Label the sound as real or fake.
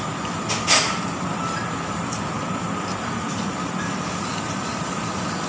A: fake